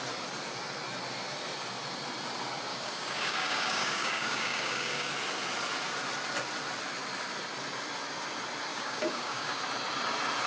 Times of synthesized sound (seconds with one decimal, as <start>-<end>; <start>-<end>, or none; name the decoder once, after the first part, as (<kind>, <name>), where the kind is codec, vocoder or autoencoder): 2.7-5.1 (codec, DAC); 8.7-9.6